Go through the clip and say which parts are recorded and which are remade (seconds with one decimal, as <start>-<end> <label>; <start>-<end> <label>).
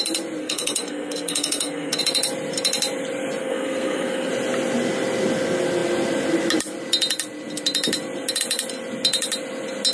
0.0-0.4 recorded; 0.4-2.0 remade; 2.0-3.4 recorded; 3.4-4.3 remade; 4.3-9.9 recorded